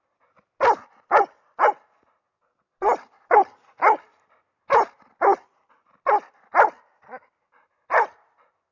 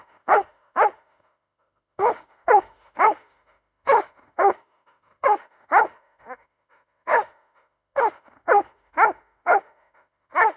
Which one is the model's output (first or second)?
second